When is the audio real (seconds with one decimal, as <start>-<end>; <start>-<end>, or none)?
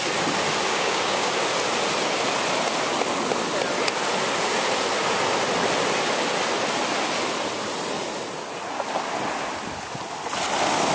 0.0-0.7; 1.3-10.9